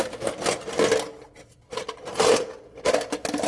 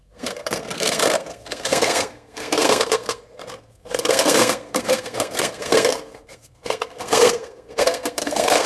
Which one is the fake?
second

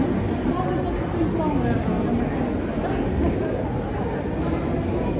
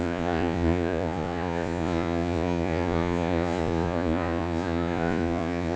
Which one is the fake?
second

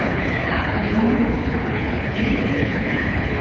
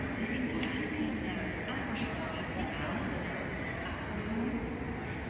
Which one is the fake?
first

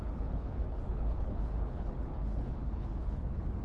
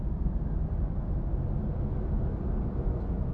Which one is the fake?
first